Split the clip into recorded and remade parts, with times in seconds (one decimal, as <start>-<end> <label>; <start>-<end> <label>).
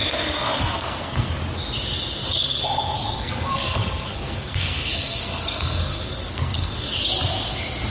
0.0-1.3 remade; 1.3-2.2 recorded; 2.2-6.9 remade; 6.9-7.9 recorded